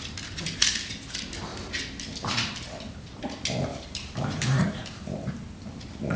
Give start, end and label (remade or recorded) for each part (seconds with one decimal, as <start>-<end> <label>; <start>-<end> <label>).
0.0-3.7 recorded; 3.7-5.3 remade; 5.3-6.2 recorded